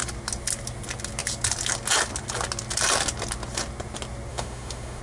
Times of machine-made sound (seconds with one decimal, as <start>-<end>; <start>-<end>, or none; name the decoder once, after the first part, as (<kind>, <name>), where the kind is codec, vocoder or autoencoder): 4.3-5.0 (autoencoder, DAC-VAE)